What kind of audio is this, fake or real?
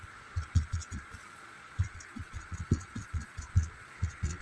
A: fake